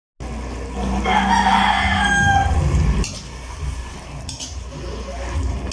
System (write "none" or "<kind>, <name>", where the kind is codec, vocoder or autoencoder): none